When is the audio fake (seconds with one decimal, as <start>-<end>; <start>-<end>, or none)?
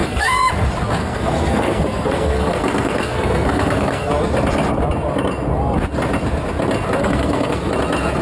0.0-0.5; 1.0-4.1; 7.0-7.7